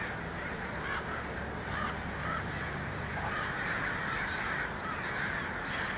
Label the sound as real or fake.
real